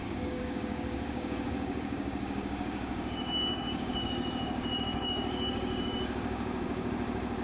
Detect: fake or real fake